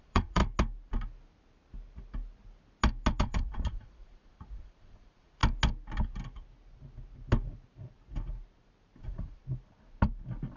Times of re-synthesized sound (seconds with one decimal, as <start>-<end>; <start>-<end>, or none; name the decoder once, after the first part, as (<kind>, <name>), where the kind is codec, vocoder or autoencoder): 0.0-0.4 (vocoder, Vocos); 3.2-5.4; 9.0-9.4